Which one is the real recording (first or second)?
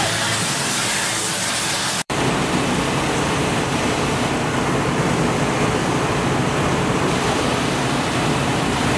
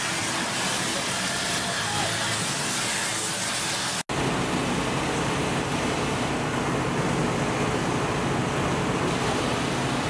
second